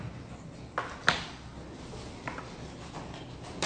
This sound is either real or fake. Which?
real